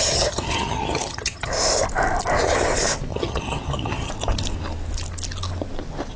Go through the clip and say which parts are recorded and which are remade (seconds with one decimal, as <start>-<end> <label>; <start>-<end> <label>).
0.0-1.5 remade; 1.5-3.1 recorded; 3.1-4.1 remade; 4.1-6.2 recorded

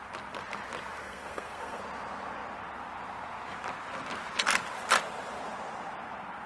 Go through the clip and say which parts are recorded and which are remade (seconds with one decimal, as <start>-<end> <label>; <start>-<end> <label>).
0.0-1.0 recorded; 1.0-1.8 remade; 1.8-6.5 recorded

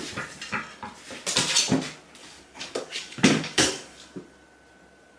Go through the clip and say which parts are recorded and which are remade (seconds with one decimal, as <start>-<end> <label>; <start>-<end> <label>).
0.0-2.2 recorded; 2.2-4.2 remade; 4.2-5.2 recorded

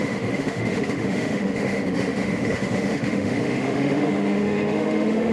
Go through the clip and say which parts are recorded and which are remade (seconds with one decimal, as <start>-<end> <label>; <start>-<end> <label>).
0.0-5.3 remade

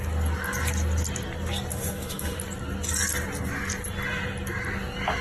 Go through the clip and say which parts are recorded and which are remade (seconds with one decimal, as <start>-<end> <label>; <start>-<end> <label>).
0.0-1.7 recorded; 1.7-2.4 remade; 2.4-5.2 recorded

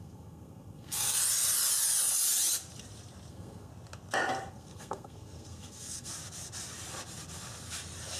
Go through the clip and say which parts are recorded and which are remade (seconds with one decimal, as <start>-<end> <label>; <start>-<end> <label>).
0.0-1.2 remade; 1.2-3.3 recorded; 3.3-3.7 remade; 3.7-4.5 recorded; 4.5-6.1 remade; 6.1-8.2 recorded

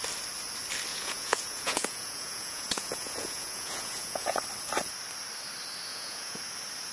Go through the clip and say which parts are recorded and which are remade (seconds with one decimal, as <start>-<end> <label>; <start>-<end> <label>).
0.0-0.9 recorded; 0.9-4.4 remade; 4.4-5.9 recorded; 5.9-6.4 remade; 6.4-6.9 recorded